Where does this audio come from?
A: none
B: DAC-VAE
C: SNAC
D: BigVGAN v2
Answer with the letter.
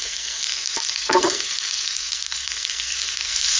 C